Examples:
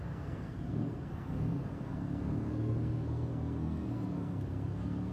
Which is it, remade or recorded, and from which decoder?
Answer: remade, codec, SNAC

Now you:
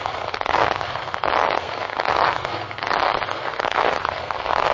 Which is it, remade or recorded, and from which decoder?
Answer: remade, codec, SNAC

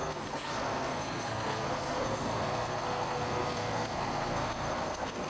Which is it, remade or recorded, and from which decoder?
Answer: remade, codec, SNAC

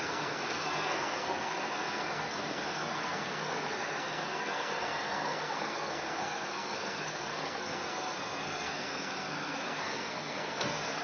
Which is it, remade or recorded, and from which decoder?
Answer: remade, codec, SNAC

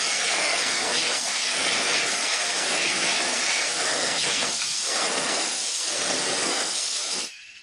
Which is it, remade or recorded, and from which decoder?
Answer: remade, codec, SNAC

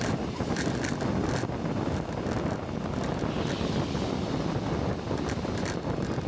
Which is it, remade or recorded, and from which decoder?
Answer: recorded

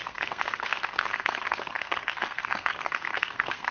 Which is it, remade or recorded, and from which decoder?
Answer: remade, codec, SNAC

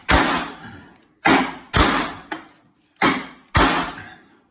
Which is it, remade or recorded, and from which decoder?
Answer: recorded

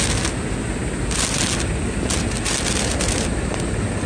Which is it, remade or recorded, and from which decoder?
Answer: recorded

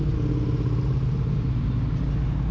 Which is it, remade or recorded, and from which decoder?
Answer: recorded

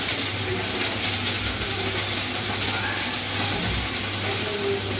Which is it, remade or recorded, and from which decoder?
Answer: recorded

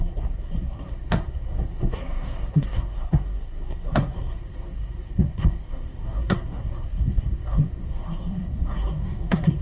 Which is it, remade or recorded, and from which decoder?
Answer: remade, codec, SNAC